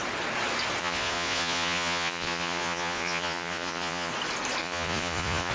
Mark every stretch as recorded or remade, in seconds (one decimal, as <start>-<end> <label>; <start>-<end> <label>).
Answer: 0.0-0.8 recorded; 0.8-4.1 remade; 4.1-4.6 recorded; 4.6-5.5 remade